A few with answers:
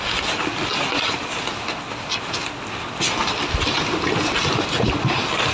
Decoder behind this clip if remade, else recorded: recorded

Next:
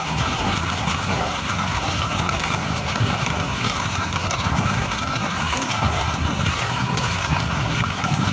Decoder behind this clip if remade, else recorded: remade, codec, SNAC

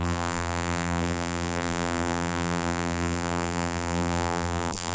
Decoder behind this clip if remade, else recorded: remade, vocoder, BigVGAN v2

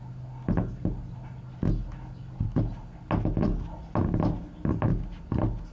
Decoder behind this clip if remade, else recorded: recorded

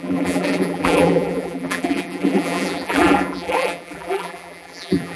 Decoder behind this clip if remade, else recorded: remade, vocoder, BigVGAN v2